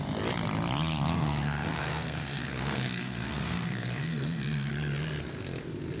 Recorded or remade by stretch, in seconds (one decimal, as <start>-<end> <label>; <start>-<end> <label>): 0.0-1.1 recorded; 1.1-4.7 remade; 4.7-6.0 recorded